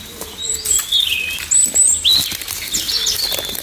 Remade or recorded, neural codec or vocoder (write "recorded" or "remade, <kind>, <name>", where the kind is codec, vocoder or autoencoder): recorded